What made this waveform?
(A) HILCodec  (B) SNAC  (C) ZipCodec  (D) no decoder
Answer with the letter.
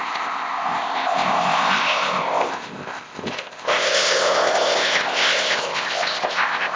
C